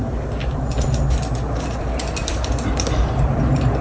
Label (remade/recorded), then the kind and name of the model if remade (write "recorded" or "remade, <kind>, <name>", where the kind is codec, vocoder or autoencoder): recorded